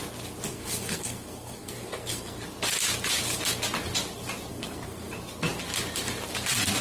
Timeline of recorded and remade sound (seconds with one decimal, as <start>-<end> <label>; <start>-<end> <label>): 0.0-0.5 recorded; 0.5-2.4 remade; 2.4-4.5 recorded; 4.5-5.1 remade; 5.1-6.8 recorded